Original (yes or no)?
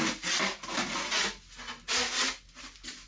yes